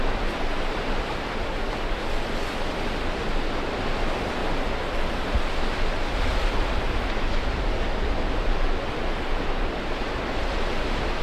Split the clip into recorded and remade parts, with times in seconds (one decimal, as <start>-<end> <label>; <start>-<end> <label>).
0.0-11.2 recorded